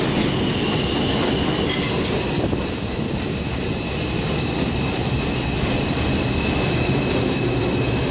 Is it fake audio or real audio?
real